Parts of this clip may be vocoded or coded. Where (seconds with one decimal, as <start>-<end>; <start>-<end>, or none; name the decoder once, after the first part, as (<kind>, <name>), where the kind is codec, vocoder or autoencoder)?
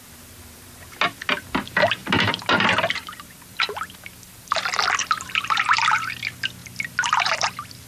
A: 2.0-4.6 (vocoder, BigVGAN v2); 5.0-5.9; 6.6-7.3